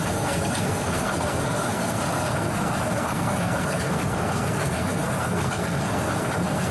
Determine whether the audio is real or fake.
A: fake